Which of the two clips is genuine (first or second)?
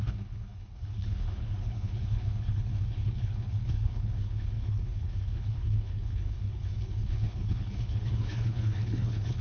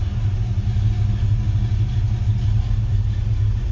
second